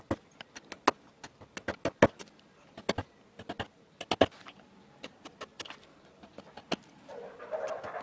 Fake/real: real